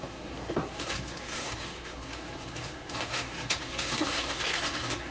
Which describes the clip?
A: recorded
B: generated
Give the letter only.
B